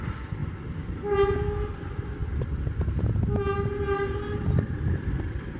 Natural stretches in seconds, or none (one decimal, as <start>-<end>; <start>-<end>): 0.0-5.6